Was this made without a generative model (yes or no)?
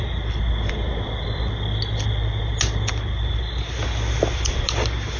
yes